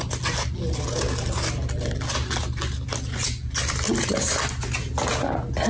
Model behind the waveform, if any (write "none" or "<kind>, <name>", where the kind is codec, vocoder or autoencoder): none